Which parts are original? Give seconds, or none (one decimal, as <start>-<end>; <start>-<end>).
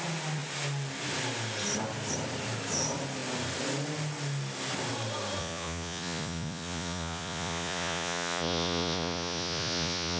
0.0-5.4